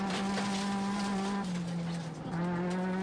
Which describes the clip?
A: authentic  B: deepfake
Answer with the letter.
B